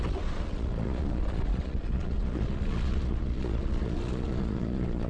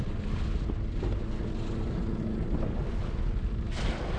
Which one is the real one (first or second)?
second